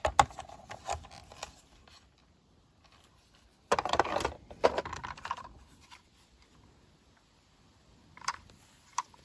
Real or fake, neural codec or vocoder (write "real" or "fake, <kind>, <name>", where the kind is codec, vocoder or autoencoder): real